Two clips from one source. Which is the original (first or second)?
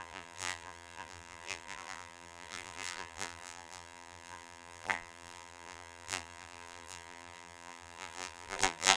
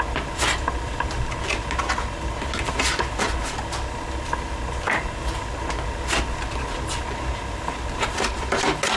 second